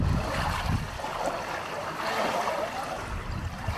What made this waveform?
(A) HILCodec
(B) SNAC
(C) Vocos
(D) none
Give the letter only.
D